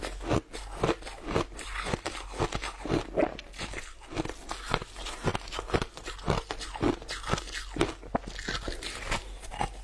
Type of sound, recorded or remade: recorded